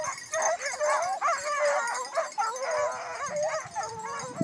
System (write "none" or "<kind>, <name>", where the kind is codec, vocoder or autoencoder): none